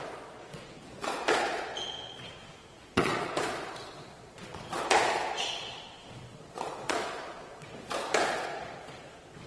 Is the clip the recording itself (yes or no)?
no